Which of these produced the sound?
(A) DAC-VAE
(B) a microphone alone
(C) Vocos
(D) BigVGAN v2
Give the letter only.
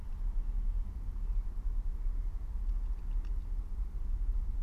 B